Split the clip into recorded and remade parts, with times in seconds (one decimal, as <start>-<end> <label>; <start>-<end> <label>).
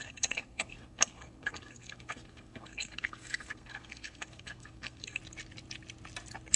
0.0-5.2 remade; 5.2-6.6 recorded